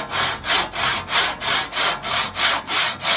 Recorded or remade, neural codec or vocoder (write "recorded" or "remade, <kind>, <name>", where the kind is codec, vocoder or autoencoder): recorded